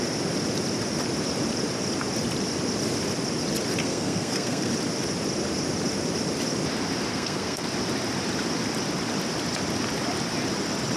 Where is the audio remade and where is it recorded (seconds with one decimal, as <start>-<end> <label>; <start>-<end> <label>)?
0.0-3.8 recorded; 3.8-4.7 remade; 4.7-7.1 recorded; 7.1-7.6 remade; 7.6-11.0 recorded